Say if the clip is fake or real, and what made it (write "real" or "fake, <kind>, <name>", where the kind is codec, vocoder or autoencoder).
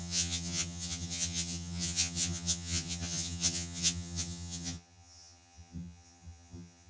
fake, vocoder, HiFi-GAN